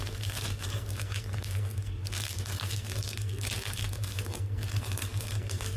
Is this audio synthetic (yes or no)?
yes